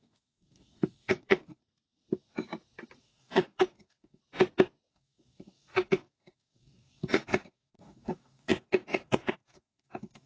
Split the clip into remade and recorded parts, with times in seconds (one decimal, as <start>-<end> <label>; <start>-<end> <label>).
0.0-1.6 remade; 1.6-3.0 recorded; 3.0-4.2 remade; 4.2-4.9 recorded; 4.9-10.3 remade